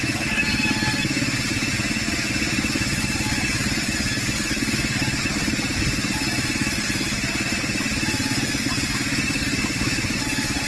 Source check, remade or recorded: recorded